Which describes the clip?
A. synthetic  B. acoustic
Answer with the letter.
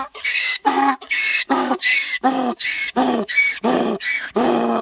A